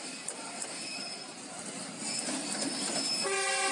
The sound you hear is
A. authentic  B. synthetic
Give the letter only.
A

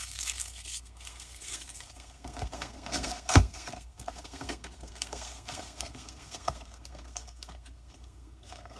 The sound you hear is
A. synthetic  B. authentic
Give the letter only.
A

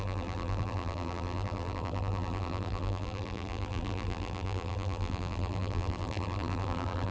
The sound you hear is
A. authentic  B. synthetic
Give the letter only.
B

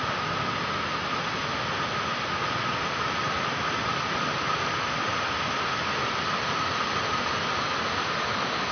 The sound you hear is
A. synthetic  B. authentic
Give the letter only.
B